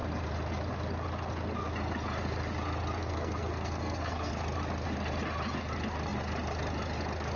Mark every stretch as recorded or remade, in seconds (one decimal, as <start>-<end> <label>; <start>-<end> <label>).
0.0-3.0 recorded; 3.0-4.3 remade; 4.3-7.4 recorded